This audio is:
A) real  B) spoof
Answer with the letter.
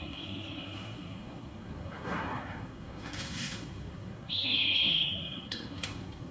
B